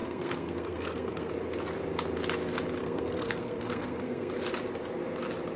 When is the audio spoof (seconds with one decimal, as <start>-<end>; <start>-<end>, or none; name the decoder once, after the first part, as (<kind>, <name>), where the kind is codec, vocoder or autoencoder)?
0.0-1.3 (codec, SNAC); 2.8-4.3

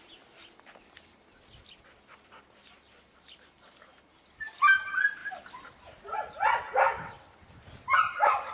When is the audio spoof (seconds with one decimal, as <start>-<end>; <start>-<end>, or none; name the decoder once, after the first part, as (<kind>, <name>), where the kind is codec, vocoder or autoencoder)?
none

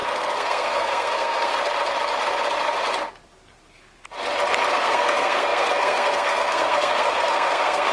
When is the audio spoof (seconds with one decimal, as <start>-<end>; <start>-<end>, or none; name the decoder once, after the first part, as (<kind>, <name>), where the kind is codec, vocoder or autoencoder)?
0.0-1.5 (codec, SNAC); 4.7-7.9